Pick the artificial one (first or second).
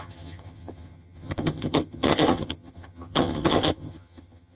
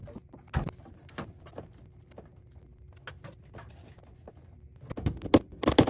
first